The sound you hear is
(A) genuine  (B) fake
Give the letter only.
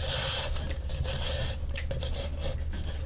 A